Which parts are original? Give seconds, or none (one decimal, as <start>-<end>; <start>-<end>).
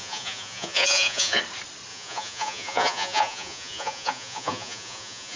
1.4-1.9